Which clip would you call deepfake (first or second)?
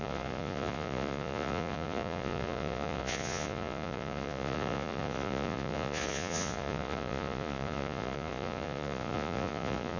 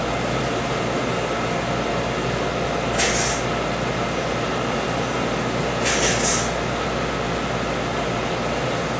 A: first